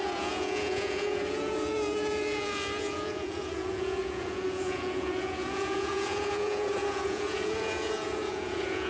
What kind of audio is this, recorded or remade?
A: remade